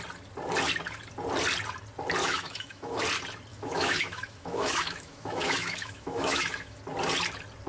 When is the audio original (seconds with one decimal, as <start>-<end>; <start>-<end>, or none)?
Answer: 0.0-2.2; 3.0-3.5; 6.8-7.7